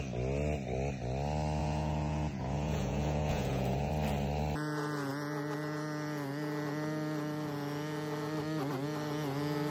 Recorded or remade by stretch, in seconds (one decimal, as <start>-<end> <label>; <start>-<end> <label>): 0.0-1.6 recorded; 1.6-3.9 remade; 3.9-9.7 recorded